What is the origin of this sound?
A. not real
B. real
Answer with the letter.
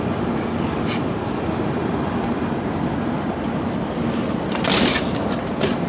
B